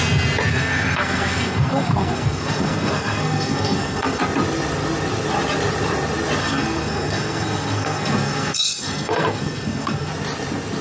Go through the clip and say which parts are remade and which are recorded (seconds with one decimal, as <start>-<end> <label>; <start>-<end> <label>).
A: 0.0-0.5 recorded; 0.5-4.2 remade; 4.2-6.4 recorded; 6.4-10.1 remade; 10.1-10.8 recorded